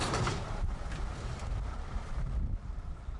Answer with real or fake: fake